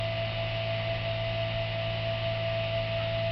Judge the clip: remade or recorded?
recorded